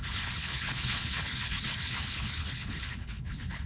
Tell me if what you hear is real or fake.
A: fake